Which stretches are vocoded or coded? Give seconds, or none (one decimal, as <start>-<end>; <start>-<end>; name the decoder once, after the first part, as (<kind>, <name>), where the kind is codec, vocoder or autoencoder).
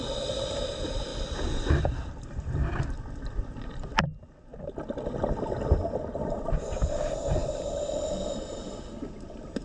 0.0-1.1 (vocoder, BigVGAN v2); 1.8-4.5; 6.0-9.6